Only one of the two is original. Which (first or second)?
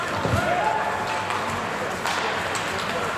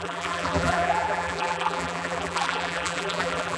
first